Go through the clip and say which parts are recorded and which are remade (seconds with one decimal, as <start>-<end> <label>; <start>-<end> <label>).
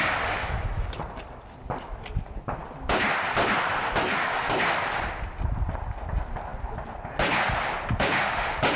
0.0-0.4 recorded; 0.4-1.0 remade; 1.0-4.0 recorded; 4.0-4.6 remade; 4.6-8.8 recorded